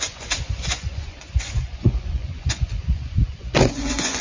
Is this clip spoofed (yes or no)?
yes